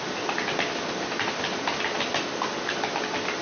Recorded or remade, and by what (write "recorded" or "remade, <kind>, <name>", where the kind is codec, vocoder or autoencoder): recorded